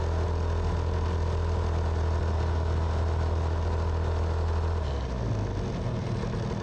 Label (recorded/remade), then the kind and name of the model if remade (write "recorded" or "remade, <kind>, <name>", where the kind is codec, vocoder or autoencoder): recorded